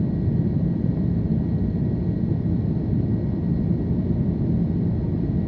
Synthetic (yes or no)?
no